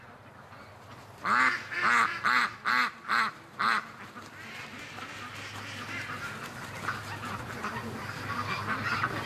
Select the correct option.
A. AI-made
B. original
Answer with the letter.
B